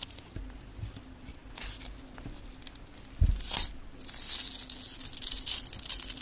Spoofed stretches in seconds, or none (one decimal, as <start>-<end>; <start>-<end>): none